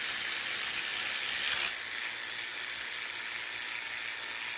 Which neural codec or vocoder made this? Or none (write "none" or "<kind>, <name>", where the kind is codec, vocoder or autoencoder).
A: none